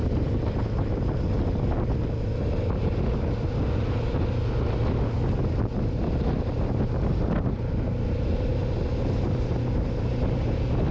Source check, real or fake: real